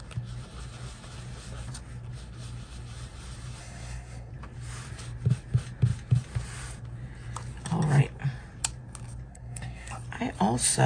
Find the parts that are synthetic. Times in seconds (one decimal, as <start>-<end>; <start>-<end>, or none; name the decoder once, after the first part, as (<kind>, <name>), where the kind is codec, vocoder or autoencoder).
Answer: 3.6-4.3 (codec, SNAC); 9.3-9.9